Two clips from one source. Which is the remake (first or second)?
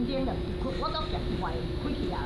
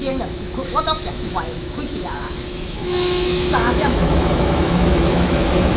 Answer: second